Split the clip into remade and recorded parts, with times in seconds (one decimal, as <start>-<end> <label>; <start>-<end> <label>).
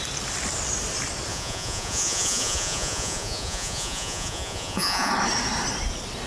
0.0-1.3 recorded; 1.3-5.1 remade; 5.1-6.3 recorded